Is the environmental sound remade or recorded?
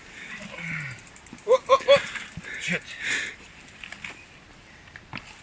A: recorded